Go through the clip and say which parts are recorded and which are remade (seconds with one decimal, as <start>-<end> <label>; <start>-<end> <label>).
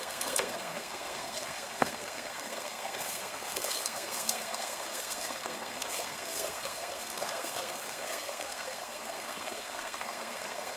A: 0.0-10.8 remade